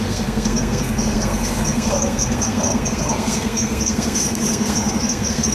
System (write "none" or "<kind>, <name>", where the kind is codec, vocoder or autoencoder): codec, SNAC